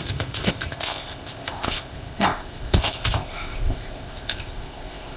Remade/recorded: remade